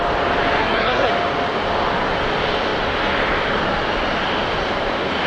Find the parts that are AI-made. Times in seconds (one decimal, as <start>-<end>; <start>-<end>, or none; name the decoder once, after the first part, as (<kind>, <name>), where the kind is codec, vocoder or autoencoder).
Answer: 0.6-1.1 (codec, SNAC)